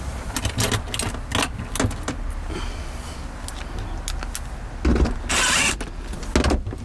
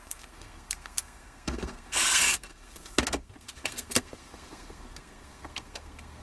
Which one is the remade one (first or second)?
second